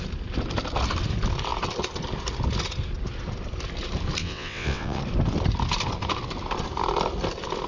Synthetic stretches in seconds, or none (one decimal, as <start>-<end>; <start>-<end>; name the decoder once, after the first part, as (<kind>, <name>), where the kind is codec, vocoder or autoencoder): 4.2-5.0 (vocoder, WaveNeXt)